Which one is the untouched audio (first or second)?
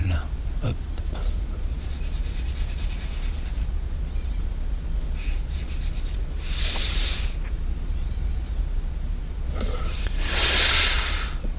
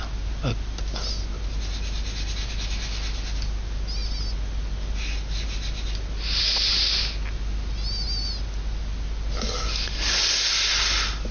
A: second